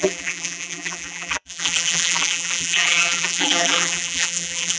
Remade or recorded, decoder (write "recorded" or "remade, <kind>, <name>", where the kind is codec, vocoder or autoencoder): remade, vocoder, BigVGAN v2